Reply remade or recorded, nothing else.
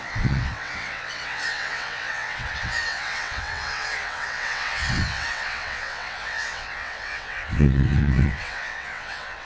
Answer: remade